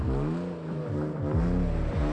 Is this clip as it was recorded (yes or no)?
yes